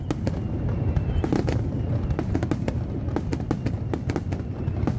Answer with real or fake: real